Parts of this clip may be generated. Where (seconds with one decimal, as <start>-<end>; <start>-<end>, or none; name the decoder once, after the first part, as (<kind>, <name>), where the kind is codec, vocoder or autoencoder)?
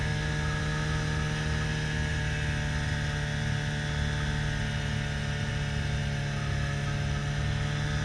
none